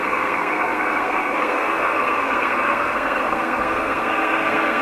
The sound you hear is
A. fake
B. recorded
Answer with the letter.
A